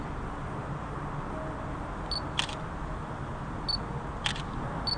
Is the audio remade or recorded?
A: recorded